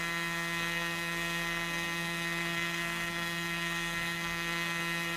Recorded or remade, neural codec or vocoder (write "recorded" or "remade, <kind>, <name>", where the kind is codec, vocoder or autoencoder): remade, codec, SNAC